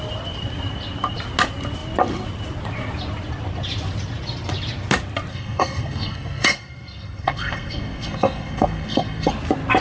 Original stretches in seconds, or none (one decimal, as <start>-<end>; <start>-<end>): 0.0-5.3; 9.3-9.8

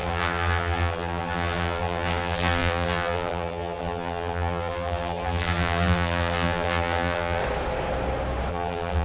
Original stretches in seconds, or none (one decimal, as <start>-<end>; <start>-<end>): 7.4-8.5